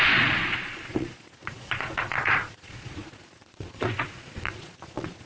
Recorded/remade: remade